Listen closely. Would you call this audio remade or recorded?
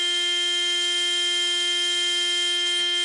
recorded